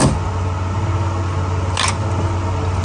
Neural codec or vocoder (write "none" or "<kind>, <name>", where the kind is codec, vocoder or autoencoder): none